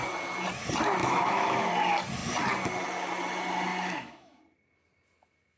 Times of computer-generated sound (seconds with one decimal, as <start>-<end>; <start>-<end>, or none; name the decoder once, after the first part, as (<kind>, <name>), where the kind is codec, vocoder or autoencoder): 1.0-1.7 (autoencoder, DAC-VAE); 3.7-4.4